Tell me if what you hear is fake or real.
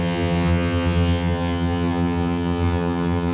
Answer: fake